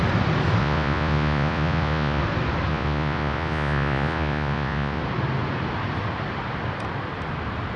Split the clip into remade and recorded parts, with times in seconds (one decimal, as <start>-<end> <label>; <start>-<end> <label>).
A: 0.0-0.6 recorded; 0.6-2.2 remade; 2.2-2.7 recorded; 2.7-5.0 remade; 5.0-7.8 recorded